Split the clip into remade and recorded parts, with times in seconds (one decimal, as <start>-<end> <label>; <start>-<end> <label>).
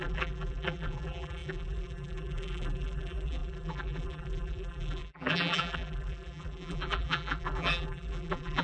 0.0-8.6 remade